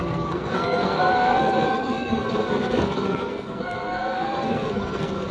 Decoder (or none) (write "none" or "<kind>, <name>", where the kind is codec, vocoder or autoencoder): codec, SNAC